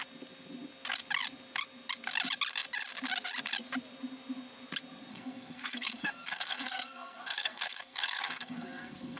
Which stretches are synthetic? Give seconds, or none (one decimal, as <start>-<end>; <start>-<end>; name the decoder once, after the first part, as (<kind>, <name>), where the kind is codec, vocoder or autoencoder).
5.1-9.2 (codec, SNAC)

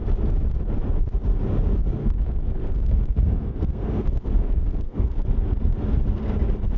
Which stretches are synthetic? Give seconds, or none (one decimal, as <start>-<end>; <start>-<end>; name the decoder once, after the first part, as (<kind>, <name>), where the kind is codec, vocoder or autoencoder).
2.0-5.7 (codec, SNAC)

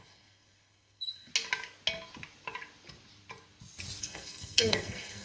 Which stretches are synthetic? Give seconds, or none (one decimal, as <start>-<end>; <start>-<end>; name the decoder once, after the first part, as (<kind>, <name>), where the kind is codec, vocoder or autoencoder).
0.0-1.3 (codec, SNAC); 4.0-5.2

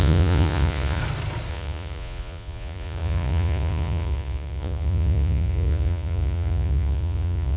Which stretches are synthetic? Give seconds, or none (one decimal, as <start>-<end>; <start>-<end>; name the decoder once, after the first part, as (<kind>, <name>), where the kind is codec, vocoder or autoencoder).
0.0-1.0 (vocoder, Vocos); 1.5-7.6